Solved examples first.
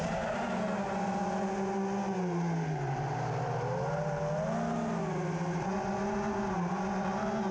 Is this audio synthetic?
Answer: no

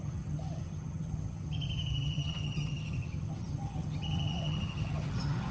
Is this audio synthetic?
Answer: yes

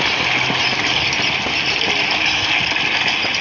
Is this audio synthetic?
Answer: no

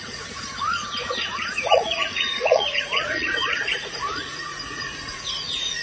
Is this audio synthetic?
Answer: yes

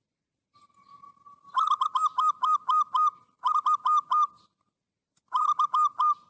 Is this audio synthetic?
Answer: no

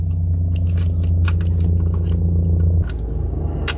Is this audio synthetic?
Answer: no